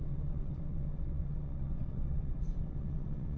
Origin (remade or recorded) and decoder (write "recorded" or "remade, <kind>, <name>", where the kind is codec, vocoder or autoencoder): remade, vocoder, WaveNeXt